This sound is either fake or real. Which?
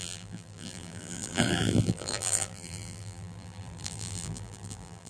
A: fake